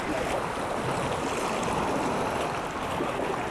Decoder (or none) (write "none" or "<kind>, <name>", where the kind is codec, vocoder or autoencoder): none